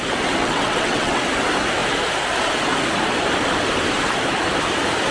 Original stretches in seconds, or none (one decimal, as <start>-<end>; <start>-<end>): 0.0-0.4; 1.2-5.1